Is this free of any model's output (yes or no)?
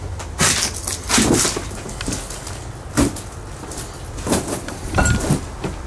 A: yes